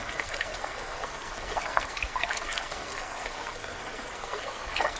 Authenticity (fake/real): fake